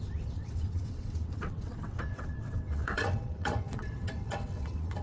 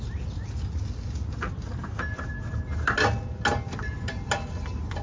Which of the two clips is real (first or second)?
second